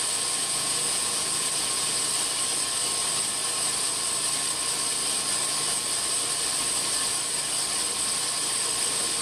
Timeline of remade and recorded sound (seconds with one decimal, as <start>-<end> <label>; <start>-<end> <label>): 0.0-0.4 recorded; 0.4-2.1 remade; 2.1-9.2 recorded